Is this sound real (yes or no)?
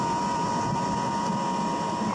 yes